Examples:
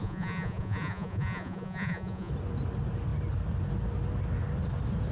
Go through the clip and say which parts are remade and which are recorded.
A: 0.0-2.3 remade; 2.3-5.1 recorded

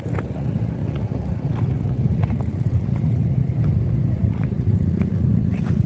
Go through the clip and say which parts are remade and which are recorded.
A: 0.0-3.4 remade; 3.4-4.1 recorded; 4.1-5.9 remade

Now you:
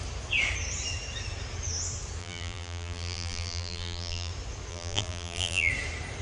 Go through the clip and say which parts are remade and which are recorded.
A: 0.0-2.2 recorded; 2.2-4.3 remade; 4.3-4.7 recorded; 4.7-5.7 remade; 5.7-6.2 recorded

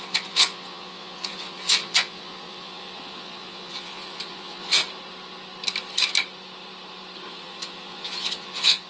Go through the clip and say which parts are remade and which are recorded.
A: 0.0-4.8 remade; 4.8-7.3 recorded; 7.3-8.9 remade

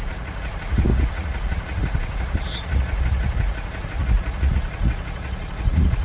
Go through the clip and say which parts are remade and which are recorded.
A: 0.0-6.0 remade

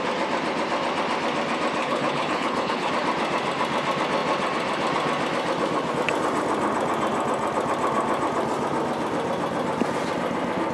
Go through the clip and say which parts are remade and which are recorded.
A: 0.0-1.8 recorded; 1.8-2.9 remade; 2.9-10.7 recorded

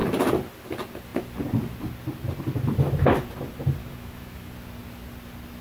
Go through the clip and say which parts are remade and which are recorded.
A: 0.0-3.8 recorded; 3.8-4.5 remade; 4.5-5.6 recorded

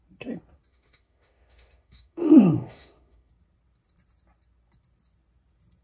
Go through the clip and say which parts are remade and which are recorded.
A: 0.0-0.7 recorded; 0.7-3.3 remade; 3.3-5.8 recorded